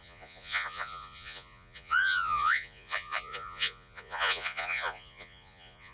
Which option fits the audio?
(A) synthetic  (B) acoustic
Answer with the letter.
A